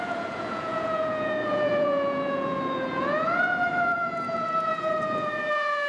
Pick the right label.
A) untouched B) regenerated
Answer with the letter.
B